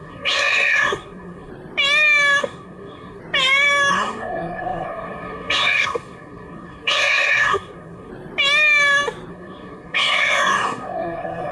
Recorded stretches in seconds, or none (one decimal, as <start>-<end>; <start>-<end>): 1.5-2.4; 3.2-3.9; 8.1-9.3